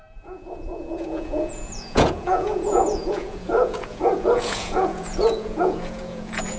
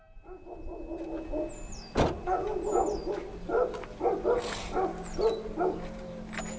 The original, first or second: second